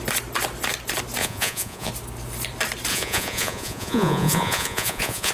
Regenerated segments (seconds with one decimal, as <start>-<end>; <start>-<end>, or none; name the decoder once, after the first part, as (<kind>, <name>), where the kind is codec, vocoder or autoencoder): 1.2-1.9 (vocoder, Vocos); 2.9-5.3